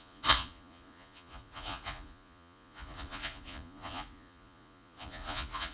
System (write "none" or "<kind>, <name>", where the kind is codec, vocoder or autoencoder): vocoder, Vocos